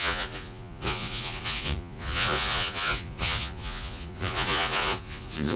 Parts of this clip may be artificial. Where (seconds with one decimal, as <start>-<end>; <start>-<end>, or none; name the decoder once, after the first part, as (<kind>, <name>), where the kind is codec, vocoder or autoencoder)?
0.0-5.6 (vocoder, Vocos)